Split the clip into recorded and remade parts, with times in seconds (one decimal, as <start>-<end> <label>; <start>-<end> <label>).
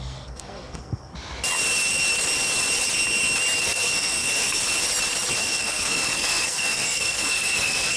0.0-1.1 remade; 1.1-3.6 recorded; 3.6-4.6 remade; 4.6-5.4 recorded; 5.4-8.0 remade